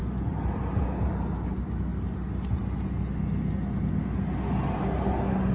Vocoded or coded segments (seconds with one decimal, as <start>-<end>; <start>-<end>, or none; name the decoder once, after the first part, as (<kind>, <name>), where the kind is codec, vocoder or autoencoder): none